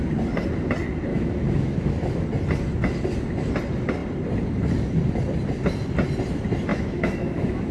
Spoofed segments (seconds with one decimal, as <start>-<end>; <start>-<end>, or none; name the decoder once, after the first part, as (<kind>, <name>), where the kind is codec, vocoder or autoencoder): 1.1-2.2 (autoencoder, DAC-VAE); 6.7-7.7